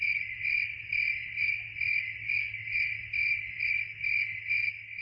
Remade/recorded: recorded